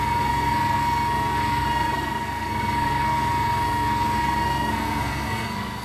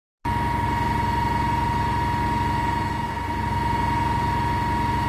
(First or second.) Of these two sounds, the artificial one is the first